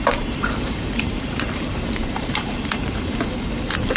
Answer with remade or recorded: remade